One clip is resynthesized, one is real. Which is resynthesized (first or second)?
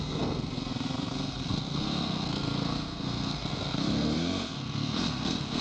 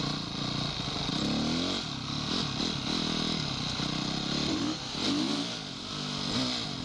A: first